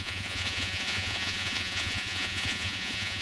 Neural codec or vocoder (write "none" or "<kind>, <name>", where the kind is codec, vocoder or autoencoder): vocoder, Vocos